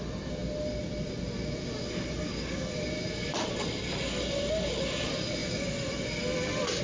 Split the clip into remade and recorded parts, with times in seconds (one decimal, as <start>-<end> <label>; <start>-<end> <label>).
0.0-6.8 recorded

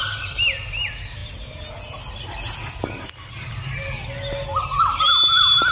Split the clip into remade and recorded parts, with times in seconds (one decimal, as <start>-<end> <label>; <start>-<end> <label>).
0.0-5.7 recorded

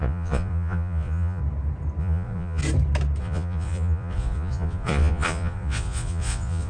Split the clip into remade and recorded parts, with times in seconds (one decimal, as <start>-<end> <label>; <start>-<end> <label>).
0.0-1.4 remade; 1.4-2.0 recorded; 2.0-2.6 remade; 2.6-3.2 recorded; 3.2-6.7 remade

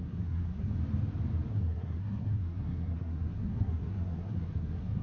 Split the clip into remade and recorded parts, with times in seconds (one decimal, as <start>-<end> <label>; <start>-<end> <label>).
0.0-0.8 remade; 0.8-1.5 recorded; 1.5-5.0 remade

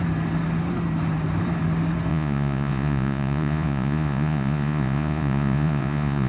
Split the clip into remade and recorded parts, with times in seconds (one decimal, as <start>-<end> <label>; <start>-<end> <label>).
0.0-2.1 recorded; 2.1-6.3 remade

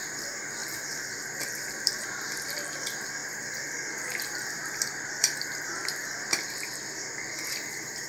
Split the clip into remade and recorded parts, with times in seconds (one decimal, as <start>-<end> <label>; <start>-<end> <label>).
0.0-8.1 remade

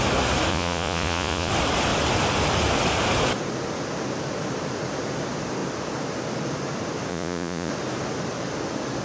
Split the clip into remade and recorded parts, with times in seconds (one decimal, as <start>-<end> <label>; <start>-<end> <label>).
0.0-0.5 recorded; 0.5-1.5 remade; 1.5-7.1 recorded; 7.1-7.7 remade; 7.7-9.0 recorded

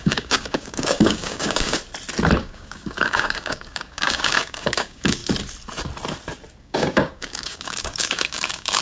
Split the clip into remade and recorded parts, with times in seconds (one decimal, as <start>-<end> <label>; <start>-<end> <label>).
0.0-1.8 remade; 1.8-2.4 recorded; 2.4-5.2 remade; 5.2-6.6 recorded; 6.6-8.8 remade